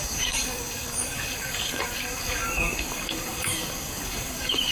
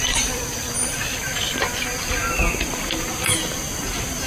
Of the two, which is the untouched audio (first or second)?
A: second